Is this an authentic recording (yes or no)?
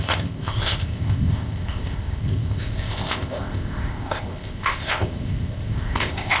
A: no